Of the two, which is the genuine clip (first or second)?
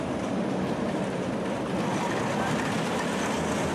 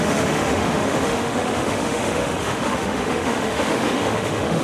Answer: first